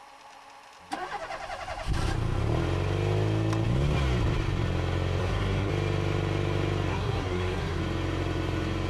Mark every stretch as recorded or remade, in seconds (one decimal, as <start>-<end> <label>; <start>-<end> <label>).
0.0-5.2 recorded; 5.2-5.7 remade; 5.7-6.9 recorded; 6.9-7.8 remade; 7.8-8.9 recorded